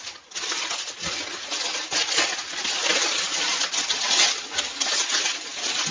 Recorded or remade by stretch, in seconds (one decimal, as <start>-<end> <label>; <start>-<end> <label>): 0.0-5.9 recorded